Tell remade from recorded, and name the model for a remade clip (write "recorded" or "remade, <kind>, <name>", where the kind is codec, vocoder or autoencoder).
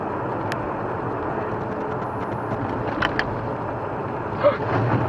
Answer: recorded